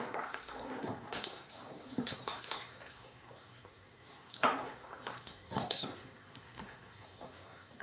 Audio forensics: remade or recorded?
remade